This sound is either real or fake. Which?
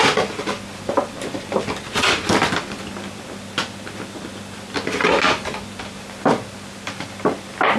real